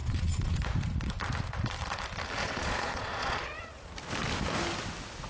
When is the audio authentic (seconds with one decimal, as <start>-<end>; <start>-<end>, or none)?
0.6-2.4; 3.6-5.3